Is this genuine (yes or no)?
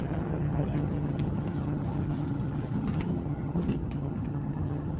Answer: no